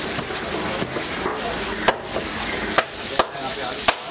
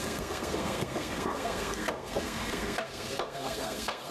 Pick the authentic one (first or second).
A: first